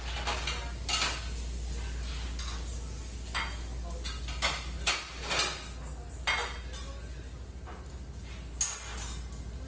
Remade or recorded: recorded